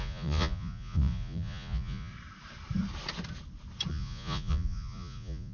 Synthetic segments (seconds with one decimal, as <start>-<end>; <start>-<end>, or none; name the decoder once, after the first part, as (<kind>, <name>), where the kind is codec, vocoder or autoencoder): 0.0-2.1 (vocoder, Vocos); 3.9-5.5